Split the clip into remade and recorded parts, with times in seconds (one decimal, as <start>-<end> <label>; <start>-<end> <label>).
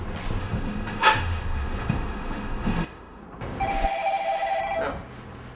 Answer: 0.0-0.4 recorded; 0.4-3.2 remade; 3.2-3.7 recorded; 3.7-4.6 remade; 4.6-5.6 recorded